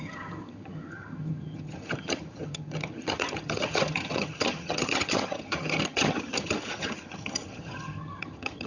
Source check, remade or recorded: remade